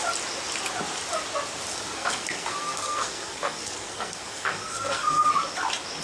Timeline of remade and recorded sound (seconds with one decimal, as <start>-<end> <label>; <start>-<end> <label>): 0.0-1.7 recorded; 1.7-5.3 remade; 5.3-6.0 recorded